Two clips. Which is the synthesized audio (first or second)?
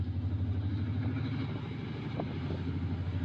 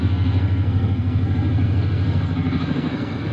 second